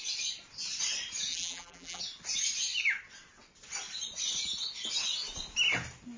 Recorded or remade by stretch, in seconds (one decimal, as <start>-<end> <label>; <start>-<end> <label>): 0.0-1.3 recorded; 1.3-2.0 remade; 2.0-6.2 recorded